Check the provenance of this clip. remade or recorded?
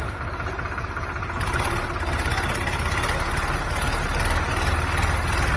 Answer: recorded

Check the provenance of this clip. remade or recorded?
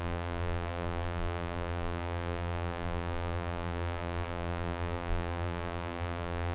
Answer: remade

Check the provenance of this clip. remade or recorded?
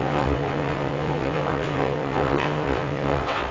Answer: remade